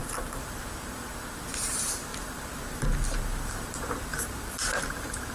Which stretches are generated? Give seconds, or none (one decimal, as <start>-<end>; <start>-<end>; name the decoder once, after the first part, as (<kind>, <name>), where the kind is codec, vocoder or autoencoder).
0.0-5.3 (vocoder, BigVGAN v2)